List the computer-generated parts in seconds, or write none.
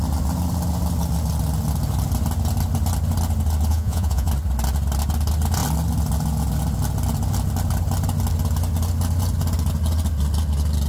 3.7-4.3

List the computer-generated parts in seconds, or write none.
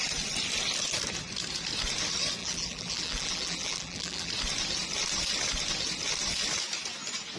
2.4-4.3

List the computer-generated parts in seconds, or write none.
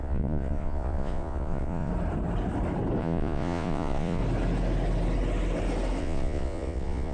0.0-1.9; 3.0-4.2; 6.0-7.1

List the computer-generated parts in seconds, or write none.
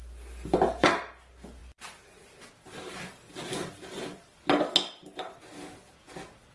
1.6-2.5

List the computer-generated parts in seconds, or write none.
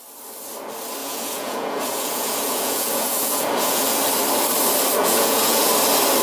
1.0-4.0; 5.0-5.7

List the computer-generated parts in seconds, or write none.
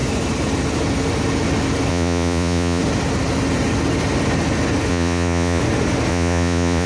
1.9-2.8; 4.9-5.6; 6.1-6.9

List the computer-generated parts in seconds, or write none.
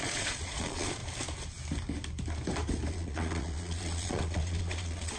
0.0-1.0; 2.9-5.2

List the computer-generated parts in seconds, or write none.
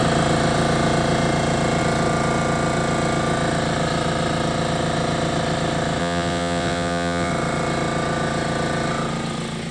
6.0-7.3